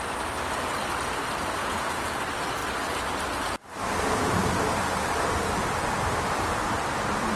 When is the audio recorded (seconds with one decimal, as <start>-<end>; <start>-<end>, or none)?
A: 0.0-1.6; 2.2-7.4